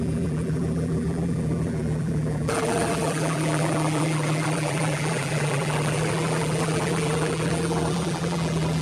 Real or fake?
fake